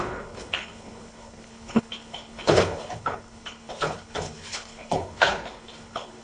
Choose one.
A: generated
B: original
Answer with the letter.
A